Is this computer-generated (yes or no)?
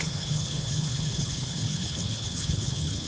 yes